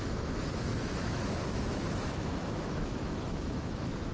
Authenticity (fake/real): fake